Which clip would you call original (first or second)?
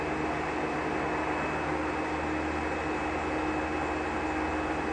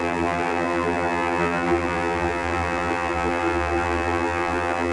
first